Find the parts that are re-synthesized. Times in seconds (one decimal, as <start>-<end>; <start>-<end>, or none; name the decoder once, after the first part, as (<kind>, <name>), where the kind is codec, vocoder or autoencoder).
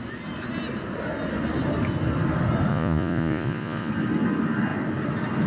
2.7-3.9 (vocoder, Vocos)